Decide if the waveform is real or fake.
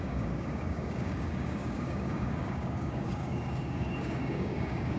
fake